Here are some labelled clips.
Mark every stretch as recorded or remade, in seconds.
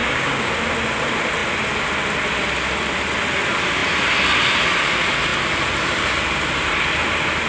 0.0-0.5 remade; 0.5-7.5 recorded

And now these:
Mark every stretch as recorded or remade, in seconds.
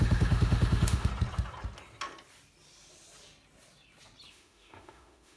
0.0-1.1 remade; 1.1-4.3 recorded; 4.3-5.4 remade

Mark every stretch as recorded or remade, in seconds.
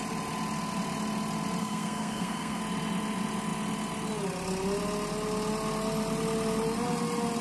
0.0-1.6 recorded; 1.6-2.6 remade; 2.6-7.4 recorded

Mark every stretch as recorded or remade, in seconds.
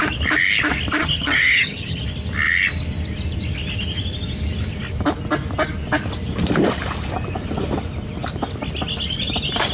0.0-1.0 recorded; 1.0-2.0 remade; 2.0-9.7 recorded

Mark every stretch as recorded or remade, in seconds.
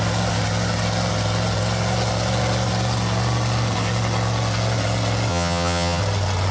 0.0-5.3 recorded; 5.3-6.0 remade; 6.0-6.5 recorded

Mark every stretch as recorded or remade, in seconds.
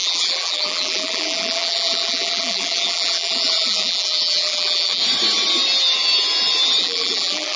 0.0-5.0 remade; 5.0-6.8 recorded; 6.8-7.6 remade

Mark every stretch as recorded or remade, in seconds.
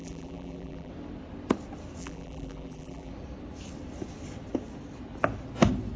0.0-0.9 remade; 0.9-2.0 recorded; 2.0-3.1 remade; 3.1-6.0 recorded